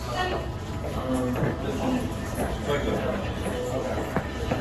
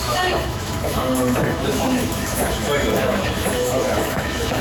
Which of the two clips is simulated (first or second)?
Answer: second